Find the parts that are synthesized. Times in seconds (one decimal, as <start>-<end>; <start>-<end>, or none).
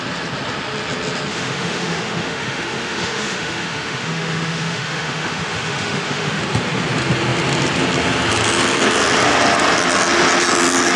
1.3-6.4